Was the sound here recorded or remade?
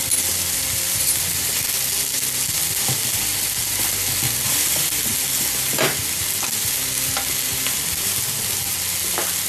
recorded